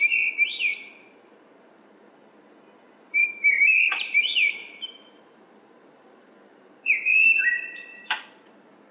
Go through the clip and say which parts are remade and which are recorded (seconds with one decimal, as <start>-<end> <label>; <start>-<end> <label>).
0.0-8.9 remade